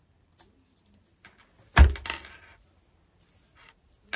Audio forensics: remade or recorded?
recorded